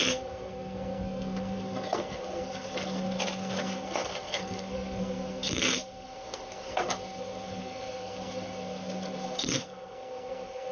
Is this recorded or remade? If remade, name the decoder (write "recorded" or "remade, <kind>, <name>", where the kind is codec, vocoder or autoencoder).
remade, codec, SNAC